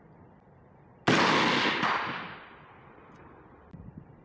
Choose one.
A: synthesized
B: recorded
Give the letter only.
B